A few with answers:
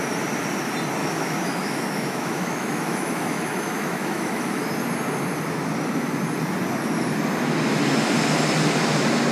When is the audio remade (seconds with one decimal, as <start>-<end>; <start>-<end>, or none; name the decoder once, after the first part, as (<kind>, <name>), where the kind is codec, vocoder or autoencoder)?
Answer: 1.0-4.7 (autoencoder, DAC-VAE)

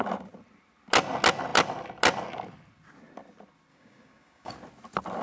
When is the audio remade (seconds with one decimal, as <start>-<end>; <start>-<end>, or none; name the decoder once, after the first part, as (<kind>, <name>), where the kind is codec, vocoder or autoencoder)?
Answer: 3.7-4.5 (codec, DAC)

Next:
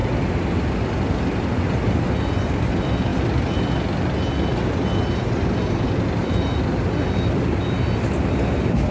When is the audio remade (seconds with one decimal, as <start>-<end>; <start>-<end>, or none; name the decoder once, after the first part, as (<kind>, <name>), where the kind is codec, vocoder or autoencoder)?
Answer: none

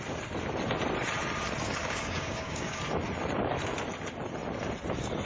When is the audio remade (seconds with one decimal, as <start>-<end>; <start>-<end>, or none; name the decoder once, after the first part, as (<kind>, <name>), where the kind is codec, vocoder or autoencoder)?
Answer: 1.8-2.8 (codec, DAC)